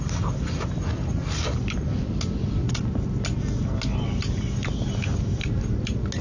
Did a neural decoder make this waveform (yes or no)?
no